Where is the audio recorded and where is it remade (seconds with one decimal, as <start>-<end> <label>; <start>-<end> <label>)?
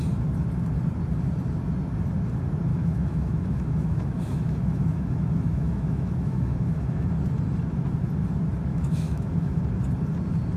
0.0-2.7 recorded; 2.7-7.1 remade; 7.1-8.7 recorded; 8.7-9.6 remade; 9.6-10.6 recorded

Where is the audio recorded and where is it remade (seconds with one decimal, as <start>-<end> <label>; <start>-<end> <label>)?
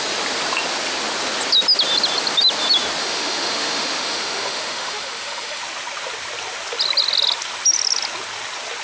0.0-3.0 recorded; 3.0-5.6 remade; 5.6-8.8 recorded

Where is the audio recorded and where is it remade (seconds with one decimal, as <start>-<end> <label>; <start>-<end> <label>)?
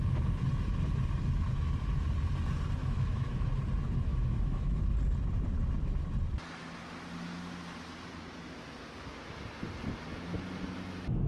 0.0-2.8 recorded; 2.8-3.5 remade; 3.5-4.1 recorded; 4.1-4.8 remade; 4.8-11.3 recorded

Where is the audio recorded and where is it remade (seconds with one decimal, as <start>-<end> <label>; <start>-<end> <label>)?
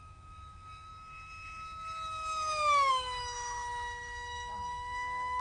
0.0-0.9 remade; 0.9-2.9 recorded; 2.9-5.4 remade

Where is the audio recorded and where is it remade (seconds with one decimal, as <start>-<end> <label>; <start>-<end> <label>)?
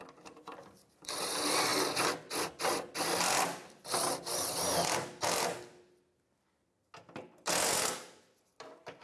0.0-9.0 recorded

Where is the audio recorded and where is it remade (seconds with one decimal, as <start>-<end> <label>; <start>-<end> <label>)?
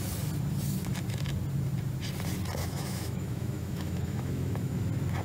0.0-2.6 recorded; 2.6-4.8 remade; 4.8-5.2 recorded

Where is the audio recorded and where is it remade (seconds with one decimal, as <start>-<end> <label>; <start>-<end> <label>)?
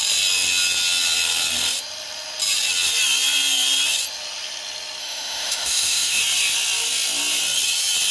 0.0-5.0 recorded; 5.0-6.2 remade; 6.2-8.1 recorded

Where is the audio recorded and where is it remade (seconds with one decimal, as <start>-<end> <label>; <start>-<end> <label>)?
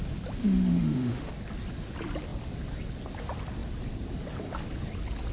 0.0-0.4 recorded; 0.4-1.3 remade; 1.3-5.3 recorded